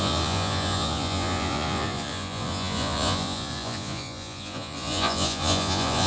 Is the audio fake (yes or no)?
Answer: yes